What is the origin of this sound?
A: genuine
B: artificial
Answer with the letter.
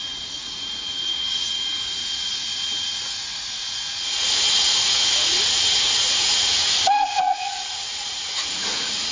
B